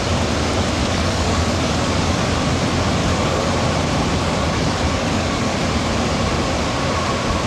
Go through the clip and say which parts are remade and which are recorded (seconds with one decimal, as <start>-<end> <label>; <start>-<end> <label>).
0.0-0.8 recorded; 0.8-2.2 remade; 2.2-3.0 recorded; 3.0-3.5 remade; 3.5-4.2 recorded; 4.2-5.6 remade; 5.6-7.5 recorded